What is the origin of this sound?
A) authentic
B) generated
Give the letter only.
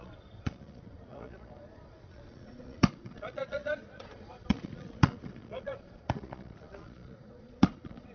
B